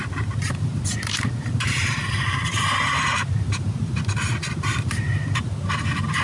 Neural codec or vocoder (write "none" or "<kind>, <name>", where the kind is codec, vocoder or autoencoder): vocoder, BigVGAN v2